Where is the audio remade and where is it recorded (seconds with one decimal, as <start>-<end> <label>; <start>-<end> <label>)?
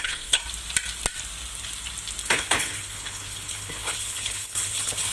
0.0-0.4 remade; 0.4-2.2 recorded; 2.2-5.1 remade